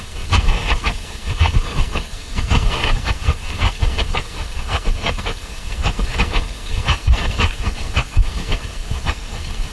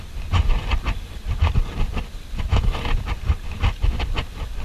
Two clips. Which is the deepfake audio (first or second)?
first